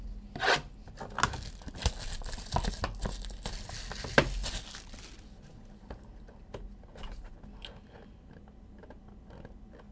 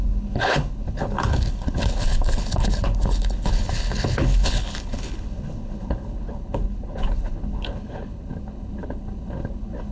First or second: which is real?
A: first